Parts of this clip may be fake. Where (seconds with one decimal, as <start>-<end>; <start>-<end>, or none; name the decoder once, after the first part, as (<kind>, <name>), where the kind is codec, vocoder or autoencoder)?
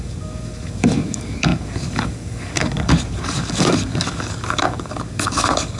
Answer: 0.0-5.8 (codec, DAC)